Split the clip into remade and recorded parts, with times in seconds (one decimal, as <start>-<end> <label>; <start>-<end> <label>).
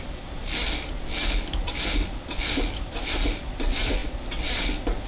0.0-5.1 recorded